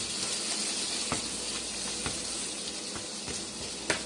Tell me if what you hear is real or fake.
real